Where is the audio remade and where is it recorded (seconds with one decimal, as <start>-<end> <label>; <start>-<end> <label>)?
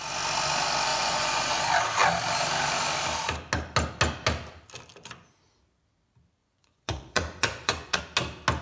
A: 0.0-0.9 recorded; 0.9-1.5 remade; 1.5-6.4 recorded; 6.4-8.0 remade; 8.0-8.6 recorded